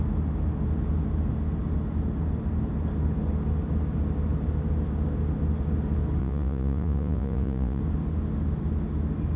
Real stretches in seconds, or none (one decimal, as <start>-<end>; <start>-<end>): 0.0-6.2; 7.8-9.4